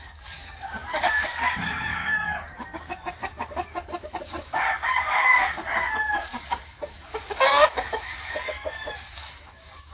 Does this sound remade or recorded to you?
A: remade